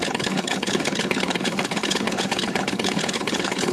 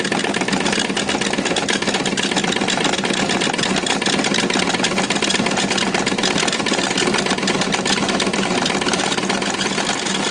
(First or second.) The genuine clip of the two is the second